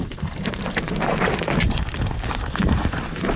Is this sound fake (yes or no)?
yes